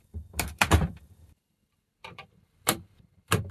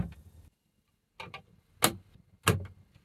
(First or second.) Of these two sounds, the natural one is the second